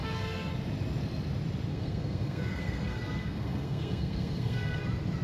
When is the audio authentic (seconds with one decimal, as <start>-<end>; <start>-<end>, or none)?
0.5-1.7; 4.8-5.2